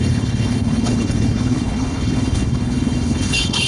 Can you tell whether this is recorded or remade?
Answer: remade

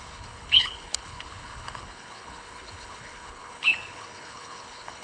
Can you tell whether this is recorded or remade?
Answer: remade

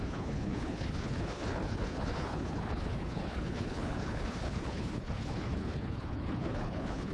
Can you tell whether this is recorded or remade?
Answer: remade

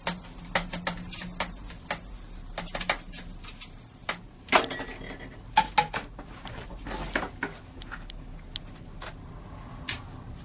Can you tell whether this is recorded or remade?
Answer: recorded